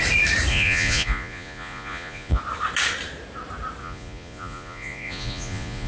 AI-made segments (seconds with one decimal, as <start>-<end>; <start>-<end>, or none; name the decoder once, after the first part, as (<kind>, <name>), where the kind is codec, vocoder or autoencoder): 0.5-2.4 (vocoder, Vocos); 3.8-5.9